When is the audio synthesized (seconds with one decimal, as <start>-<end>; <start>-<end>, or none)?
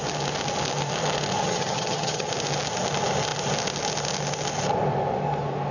1.4-2.3